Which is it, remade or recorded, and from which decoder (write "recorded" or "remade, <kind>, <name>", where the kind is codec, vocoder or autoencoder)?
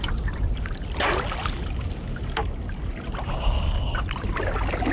recorded